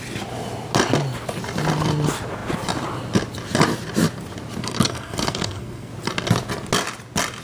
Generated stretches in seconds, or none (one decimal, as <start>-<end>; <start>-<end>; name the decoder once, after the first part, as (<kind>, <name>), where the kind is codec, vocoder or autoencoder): 4.6-5.9 (codec, SNAC)